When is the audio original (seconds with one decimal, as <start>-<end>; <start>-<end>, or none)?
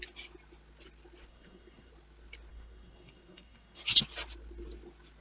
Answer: 0.0-1.3; 1.9-2.5; 3.8-5.2